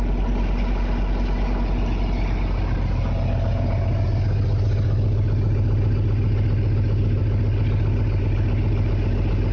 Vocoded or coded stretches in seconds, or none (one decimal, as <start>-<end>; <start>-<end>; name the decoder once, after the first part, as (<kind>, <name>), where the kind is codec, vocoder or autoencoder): none